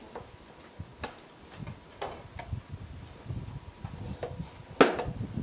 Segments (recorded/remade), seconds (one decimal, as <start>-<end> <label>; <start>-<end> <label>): 0.0-5.4 recorded